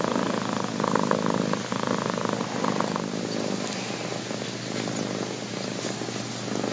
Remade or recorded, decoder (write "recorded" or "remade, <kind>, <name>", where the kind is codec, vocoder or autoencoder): recorded